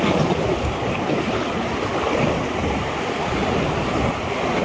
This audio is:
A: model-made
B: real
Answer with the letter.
B